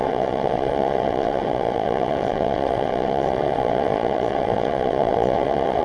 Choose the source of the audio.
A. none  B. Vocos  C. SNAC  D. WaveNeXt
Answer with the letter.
D